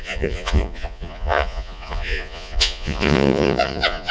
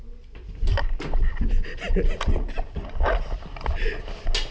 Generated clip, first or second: first